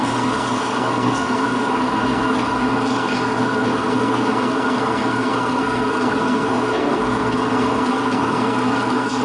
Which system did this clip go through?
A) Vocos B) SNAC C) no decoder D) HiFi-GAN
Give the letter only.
B